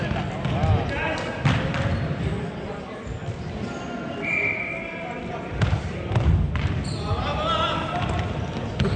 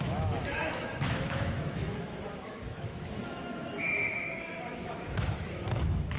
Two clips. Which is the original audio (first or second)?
first